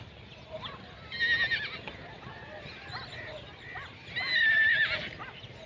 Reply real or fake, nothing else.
real